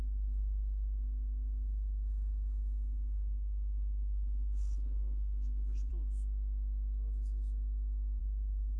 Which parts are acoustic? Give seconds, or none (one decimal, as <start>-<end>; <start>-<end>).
5.9-8.2